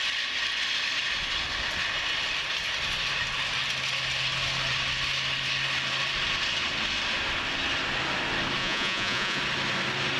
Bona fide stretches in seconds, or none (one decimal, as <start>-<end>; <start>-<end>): 0.0-8.6; 9.4-10.2